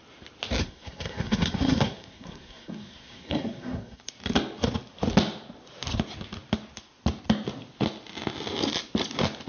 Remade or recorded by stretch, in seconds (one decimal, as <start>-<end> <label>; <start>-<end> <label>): 0.0-0.6 recorded; 0.6-4.0 remade; 4.0-9.5 recorded